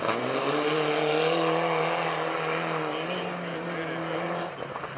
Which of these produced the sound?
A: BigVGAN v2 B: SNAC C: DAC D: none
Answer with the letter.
D